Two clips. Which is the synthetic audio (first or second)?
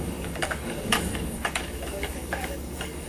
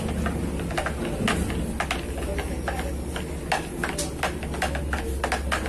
first